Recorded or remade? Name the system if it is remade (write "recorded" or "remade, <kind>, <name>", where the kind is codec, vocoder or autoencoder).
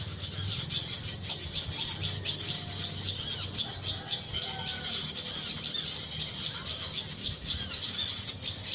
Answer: recorded